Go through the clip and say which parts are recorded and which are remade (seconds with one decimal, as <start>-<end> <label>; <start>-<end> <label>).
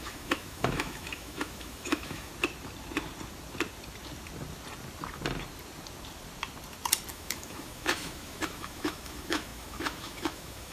0.0-2.3 remade; 2.3-7.1 recorded; 7.1-10.7 remade